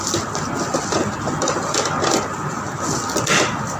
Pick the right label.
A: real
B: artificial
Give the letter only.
A